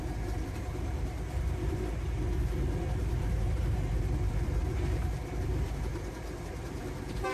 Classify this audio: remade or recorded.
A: remade